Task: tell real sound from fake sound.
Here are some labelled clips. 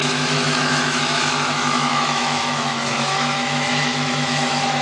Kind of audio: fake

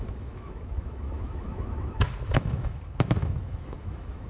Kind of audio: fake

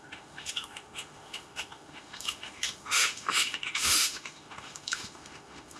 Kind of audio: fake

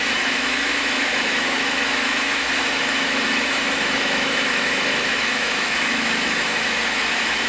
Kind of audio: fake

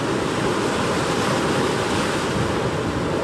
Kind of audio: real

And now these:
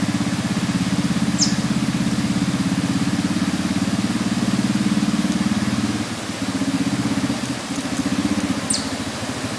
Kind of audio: real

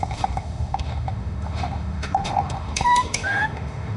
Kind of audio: fake